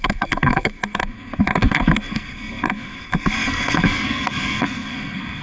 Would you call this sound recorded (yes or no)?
no